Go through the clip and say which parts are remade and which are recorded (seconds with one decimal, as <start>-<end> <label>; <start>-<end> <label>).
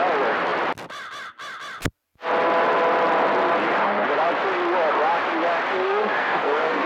0.0-5.7 recorded; 5.7-6.9 remade